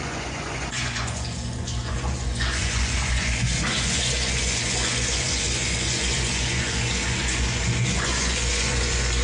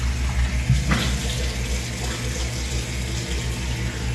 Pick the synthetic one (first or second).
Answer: first